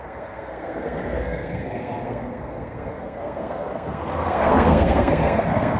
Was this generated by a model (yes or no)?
yes